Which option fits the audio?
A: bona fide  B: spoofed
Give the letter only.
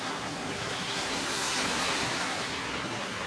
B